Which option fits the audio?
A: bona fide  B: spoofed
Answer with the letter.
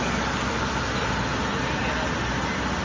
A